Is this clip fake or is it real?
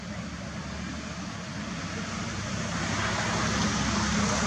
real